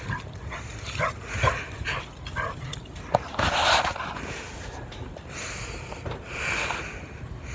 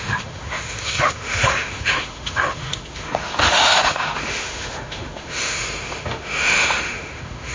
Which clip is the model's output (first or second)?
second